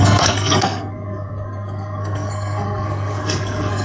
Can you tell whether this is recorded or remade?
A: remade